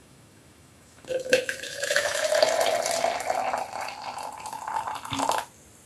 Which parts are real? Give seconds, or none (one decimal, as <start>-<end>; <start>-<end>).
2.3-5.9